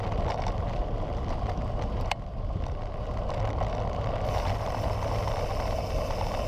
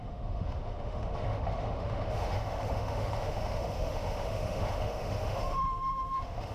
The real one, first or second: first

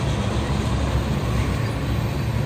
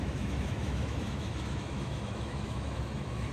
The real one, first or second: first